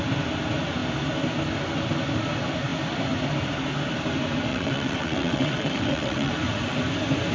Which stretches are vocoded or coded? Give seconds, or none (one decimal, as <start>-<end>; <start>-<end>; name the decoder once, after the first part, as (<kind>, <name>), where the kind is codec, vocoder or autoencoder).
4.5-6.3 (vocoder, WaveNeXt)